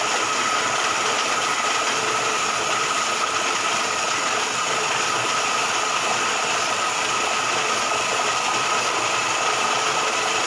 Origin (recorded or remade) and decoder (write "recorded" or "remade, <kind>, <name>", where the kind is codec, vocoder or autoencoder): remade, vocoder, BigVGAN v2